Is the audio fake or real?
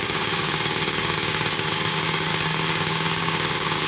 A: fake